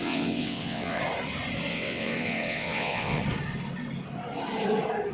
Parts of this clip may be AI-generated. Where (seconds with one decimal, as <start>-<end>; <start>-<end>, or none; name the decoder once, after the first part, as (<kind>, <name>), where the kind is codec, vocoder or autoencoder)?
0.0-1.0 (vocoder, WaveNeXt); 1.7-3.2